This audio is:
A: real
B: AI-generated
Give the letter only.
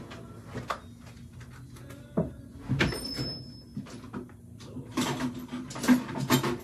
A